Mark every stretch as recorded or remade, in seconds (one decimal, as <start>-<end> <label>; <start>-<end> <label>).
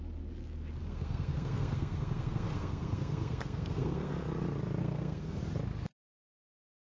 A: 0.0-0.8 recorded; 0.8-4.1 remade; 4.1-4.8 recorded; 4.8-5.4 remade; 5.4-6.8 recorded